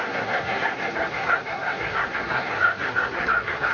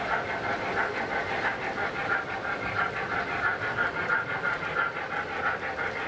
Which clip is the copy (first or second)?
first